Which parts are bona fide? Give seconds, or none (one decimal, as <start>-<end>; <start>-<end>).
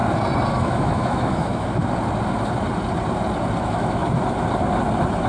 0.0-0.5; 1.8-3.6; 4.0-5.3